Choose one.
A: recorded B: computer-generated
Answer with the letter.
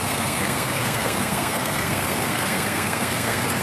B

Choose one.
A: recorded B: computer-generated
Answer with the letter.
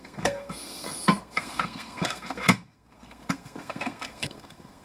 B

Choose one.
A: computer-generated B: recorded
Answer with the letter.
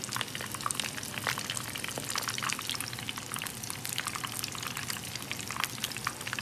B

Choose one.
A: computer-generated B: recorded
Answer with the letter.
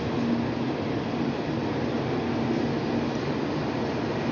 B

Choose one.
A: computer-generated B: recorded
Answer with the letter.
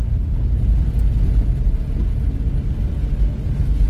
B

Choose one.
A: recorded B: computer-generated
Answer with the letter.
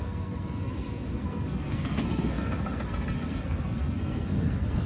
B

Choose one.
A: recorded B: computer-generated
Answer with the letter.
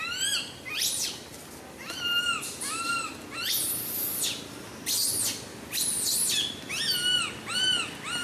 A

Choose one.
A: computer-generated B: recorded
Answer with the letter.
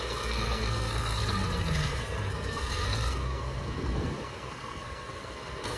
A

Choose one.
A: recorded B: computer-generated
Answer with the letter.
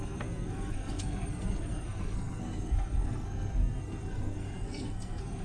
B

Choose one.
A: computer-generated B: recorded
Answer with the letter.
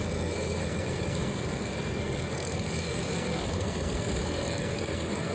A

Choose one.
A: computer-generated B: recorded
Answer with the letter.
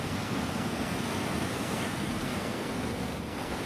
A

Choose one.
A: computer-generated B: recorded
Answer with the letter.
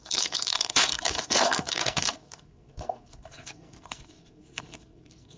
A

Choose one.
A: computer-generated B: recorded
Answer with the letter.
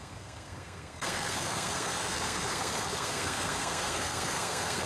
A